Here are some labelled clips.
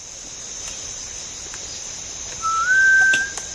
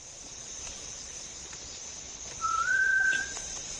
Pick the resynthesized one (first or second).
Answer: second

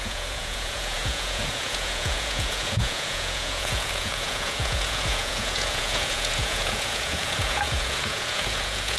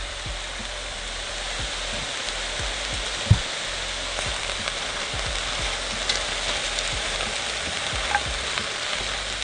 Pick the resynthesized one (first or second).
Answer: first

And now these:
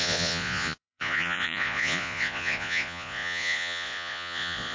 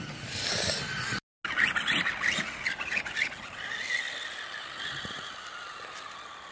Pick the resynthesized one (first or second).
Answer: first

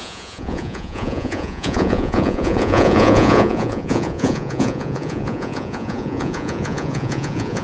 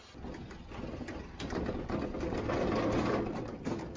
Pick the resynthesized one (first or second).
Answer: first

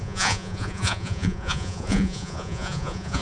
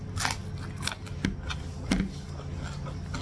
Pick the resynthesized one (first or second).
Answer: first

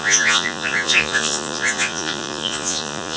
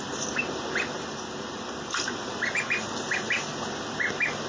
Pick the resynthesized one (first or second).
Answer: first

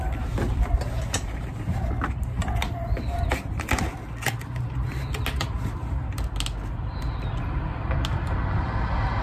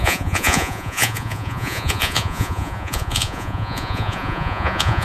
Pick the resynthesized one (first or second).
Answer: second